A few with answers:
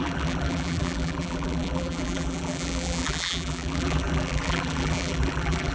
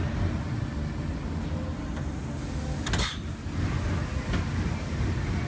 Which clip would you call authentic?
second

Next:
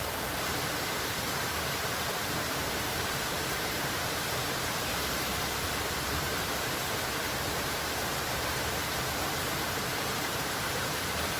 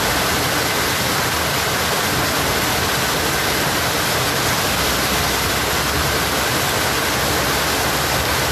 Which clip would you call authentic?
second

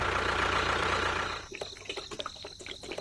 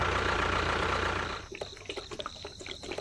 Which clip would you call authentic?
first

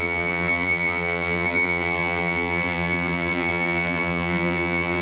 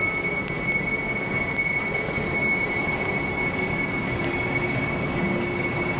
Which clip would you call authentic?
second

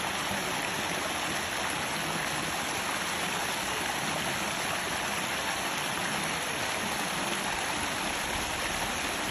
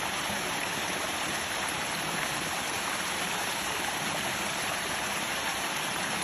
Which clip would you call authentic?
first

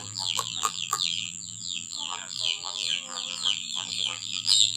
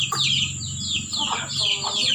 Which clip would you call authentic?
second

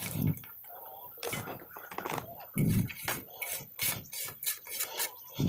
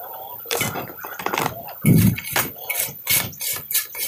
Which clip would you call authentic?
first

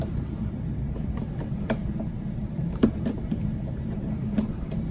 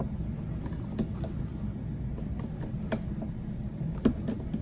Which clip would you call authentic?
second